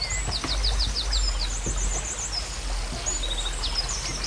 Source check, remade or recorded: recorded